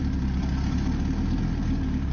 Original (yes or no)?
yes